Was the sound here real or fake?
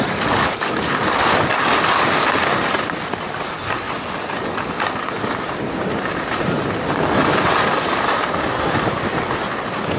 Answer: real